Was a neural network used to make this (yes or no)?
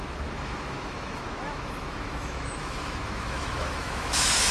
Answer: yes